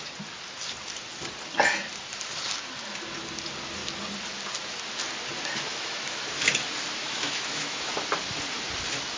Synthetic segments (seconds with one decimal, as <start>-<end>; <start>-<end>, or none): 5.7-6.4; 7.0-7.9